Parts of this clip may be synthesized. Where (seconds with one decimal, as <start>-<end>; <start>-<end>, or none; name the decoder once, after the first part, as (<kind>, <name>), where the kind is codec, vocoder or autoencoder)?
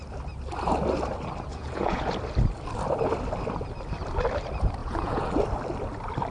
1.5-2.1 (vocoder, Vocos); 4.8-5.3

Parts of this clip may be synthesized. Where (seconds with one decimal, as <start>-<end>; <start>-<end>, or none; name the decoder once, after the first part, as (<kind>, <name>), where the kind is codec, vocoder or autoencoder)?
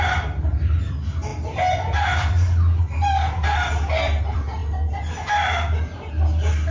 none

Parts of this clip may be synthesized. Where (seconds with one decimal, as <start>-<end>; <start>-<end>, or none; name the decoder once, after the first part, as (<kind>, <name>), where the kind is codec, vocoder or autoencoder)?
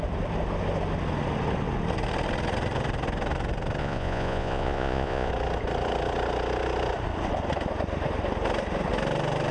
3.8-5.3 (vocoder, Vocos)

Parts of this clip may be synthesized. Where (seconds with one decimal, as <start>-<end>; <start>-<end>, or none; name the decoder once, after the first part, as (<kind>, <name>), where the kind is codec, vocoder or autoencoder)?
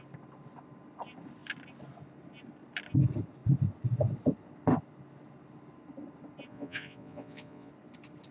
6.5-7.7 (vocoder, Vocos)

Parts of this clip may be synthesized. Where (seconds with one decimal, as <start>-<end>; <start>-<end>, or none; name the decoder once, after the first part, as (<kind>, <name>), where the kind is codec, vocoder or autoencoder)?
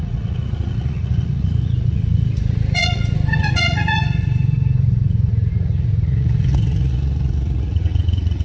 0.0-8.4 (vocoder, Vocos)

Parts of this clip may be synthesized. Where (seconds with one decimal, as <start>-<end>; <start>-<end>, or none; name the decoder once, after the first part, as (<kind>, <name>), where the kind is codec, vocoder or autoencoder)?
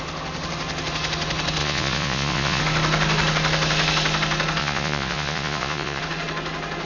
1.6-2.6 (vocoder, Vocos); 4.6-6.0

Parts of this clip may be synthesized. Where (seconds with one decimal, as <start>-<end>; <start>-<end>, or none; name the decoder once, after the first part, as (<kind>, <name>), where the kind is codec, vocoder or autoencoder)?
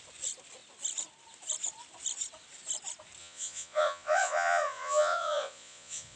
3.2-6.2 (vocoder, Vocos)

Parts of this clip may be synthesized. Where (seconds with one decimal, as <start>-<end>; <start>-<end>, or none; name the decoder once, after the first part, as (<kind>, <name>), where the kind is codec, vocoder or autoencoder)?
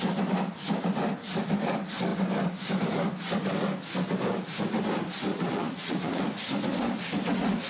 5.3-6.2 (vocoder, Vocos)